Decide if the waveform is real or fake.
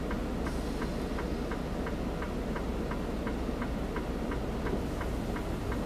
real